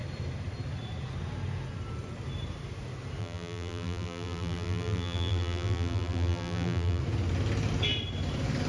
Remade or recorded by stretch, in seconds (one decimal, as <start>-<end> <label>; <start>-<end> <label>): 0.0-3.2 recorded; 3.2-7.0 remade; 7.0-8.7 recorded